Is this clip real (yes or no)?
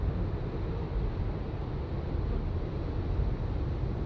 yes